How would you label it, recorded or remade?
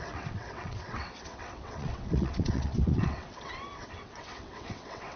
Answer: remade